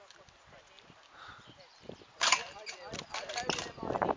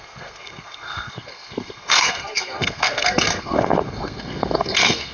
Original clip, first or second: first